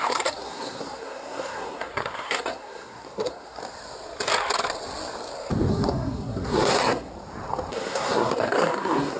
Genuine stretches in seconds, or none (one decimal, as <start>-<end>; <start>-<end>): 3.6-5.7; 7.1-7.7